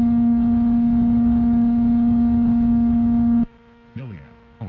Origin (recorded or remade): remade